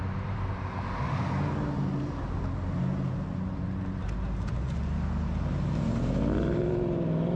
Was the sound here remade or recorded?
recorded